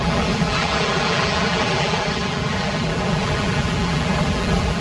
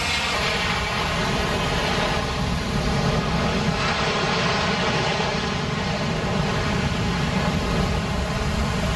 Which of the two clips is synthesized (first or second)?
first